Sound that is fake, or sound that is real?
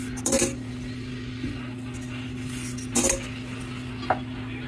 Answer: real